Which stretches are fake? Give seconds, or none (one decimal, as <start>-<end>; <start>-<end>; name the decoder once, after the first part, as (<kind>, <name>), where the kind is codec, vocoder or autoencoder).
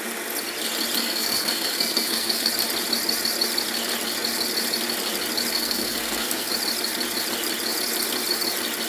1.0-2.5 (codec, SNAC); 5.5-6.5